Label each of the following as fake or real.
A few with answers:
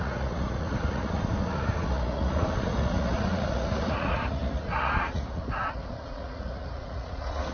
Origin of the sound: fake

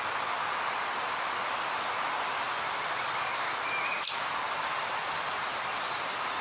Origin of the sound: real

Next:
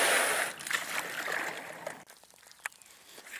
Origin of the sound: real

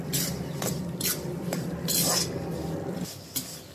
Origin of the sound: fake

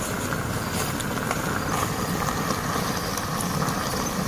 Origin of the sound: real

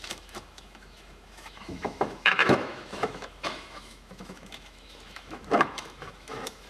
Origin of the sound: fake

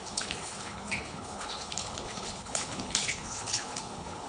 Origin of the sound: fake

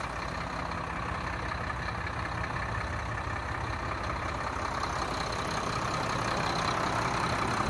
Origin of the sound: real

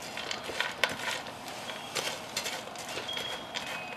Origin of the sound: real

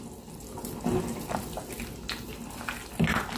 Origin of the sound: real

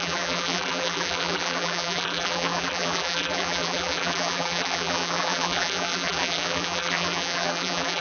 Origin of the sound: fake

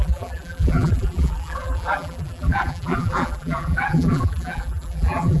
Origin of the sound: fake